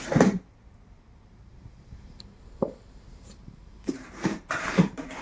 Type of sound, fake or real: fake